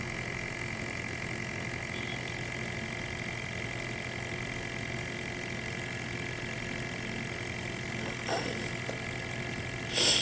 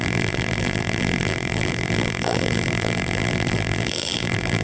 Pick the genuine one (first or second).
first